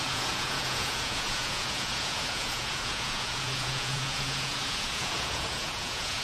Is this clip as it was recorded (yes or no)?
no